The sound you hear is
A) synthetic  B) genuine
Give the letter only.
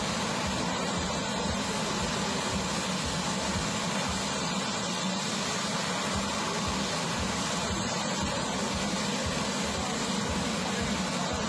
B